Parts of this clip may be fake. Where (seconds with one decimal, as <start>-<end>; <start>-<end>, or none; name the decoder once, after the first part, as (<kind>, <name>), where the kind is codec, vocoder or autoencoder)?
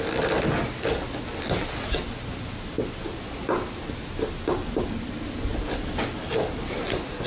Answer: none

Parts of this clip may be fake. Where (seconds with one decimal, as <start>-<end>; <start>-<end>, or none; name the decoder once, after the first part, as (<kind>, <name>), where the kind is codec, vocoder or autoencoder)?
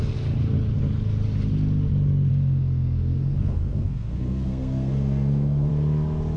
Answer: 2.3-5.7 (codec, SNAC)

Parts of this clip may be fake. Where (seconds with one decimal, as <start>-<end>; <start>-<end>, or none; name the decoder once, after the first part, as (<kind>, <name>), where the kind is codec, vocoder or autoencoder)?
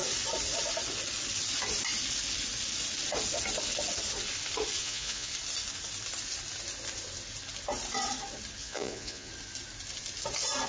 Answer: 4.8-5.3 (vocoder, Vocos); 8.6-9.3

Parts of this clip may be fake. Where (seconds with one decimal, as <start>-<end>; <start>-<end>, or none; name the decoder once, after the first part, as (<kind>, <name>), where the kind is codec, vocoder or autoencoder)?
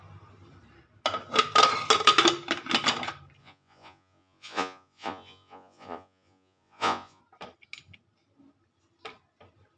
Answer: 3.4-7.2 (vocoder, Vocos)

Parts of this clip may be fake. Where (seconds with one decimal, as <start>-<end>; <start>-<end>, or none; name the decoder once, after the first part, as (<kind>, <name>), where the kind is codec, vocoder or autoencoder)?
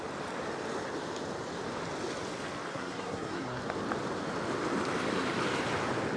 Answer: 2.7-3.6 (codec, SNAC)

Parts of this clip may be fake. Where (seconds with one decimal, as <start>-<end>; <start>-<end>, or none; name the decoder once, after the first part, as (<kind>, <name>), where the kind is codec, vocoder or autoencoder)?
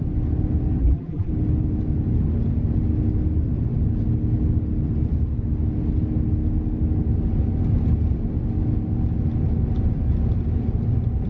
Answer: 0.8-1.3 (vocoder, BigVGAN v2)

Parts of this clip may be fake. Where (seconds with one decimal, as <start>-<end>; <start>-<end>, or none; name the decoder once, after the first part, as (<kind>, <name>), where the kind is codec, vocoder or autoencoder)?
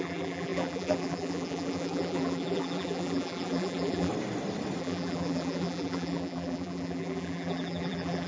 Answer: 0.0-4.1 (vocoder, BigVGAN v2); 4.8-8.3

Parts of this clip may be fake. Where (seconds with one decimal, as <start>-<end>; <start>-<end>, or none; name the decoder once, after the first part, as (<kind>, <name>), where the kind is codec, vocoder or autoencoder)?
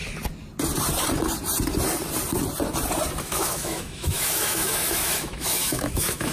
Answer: 3.2-6.3 (autoencoder, DAC-VAE)